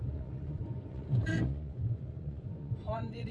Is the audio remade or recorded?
remade